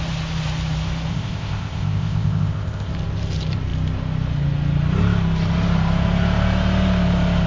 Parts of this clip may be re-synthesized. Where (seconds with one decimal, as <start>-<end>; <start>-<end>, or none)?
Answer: 1.1-2.9